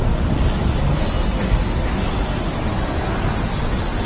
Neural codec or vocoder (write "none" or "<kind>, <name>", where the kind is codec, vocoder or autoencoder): none